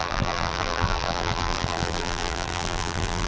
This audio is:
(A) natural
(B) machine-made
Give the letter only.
B